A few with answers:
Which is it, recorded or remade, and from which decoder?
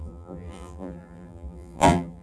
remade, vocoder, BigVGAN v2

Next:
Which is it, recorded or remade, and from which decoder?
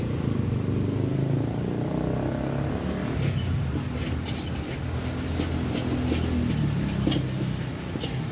recorded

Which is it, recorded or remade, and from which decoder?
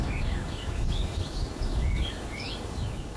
remade, codec, DAC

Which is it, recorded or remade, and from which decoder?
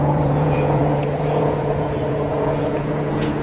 remade, vocoder, Vocos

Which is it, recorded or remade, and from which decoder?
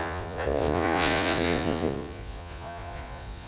remade, vocoder, Vocos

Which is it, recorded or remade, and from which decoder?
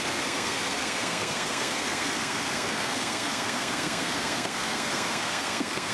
remade, codec, SNAC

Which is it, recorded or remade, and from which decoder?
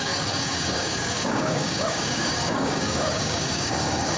remade, codec, DAC